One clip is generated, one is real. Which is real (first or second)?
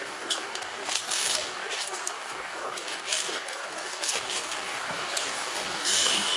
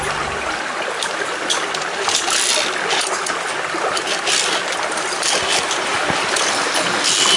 second